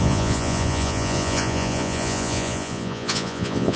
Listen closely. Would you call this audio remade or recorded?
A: remade